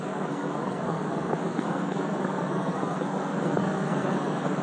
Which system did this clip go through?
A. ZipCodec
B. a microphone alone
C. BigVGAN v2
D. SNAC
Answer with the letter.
D